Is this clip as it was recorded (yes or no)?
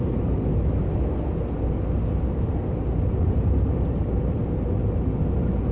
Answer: yes